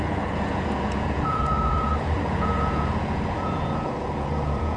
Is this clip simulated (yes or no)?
yes